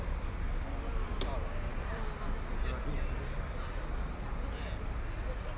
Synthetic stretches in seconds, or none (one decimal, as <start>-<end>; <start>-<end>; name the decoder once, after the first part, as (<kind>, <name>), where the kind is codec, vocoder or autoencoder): none